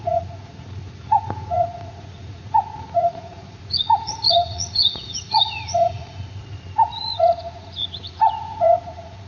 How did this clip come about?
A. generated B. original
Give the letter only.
A